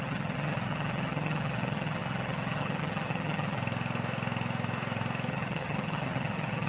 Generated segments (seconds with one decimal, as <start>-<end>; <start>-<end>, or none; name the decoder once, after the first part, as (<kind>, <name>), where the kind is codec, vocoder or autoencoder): 0.0-3.6 (vocoder, HiFi-GAN); 5.3-6.7